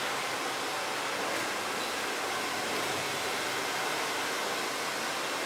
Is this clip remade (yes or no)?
no